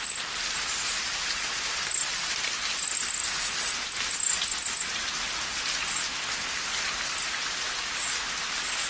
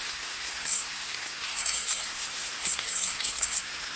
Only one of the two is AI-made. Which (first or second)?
second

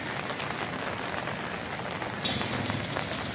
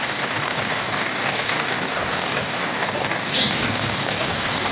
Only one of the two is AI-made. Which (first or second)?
second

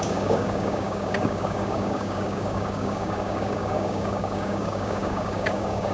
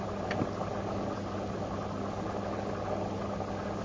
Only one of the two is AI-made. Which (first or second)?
first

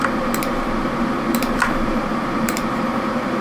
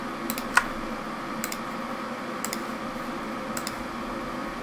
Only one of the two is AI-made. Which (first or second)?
first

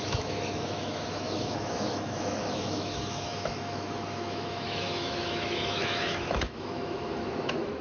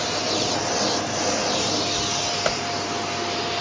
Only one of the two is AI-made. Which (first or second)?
first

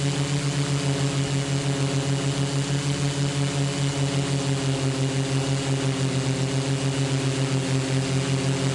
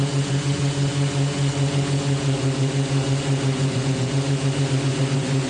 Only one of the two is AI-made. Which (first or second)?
second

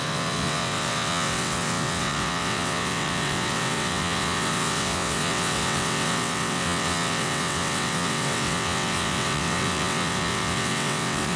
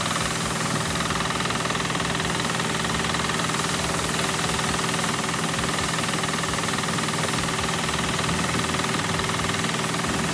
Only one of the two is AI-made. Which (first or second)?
first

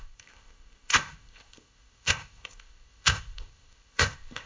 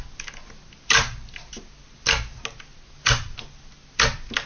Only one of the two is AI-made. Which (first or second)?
first